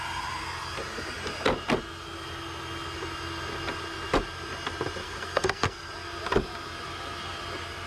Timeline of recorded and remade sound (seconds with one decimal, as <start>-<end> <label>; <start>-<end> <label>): 0.0-5.0 recorded; 5.0-5.9 remade; 5.9-7.9 recorded